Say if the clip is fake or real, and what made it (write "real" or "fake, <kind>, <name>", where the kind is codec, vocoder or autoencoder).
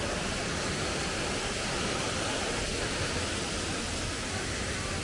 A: real